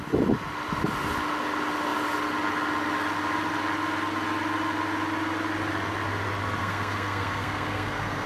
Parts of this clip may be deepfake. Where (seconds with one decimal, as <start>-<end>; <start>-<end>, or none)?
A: 6.6-8.3